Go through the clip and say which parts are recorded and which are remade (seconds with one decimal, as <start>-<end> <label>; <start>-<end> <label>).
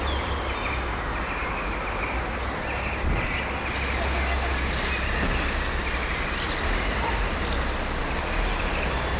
0.0-9.2 recorded